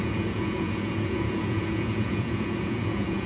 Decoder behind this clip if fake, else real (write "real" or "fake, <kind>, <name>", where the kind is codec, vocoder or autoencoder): fake, vocoder, Vocos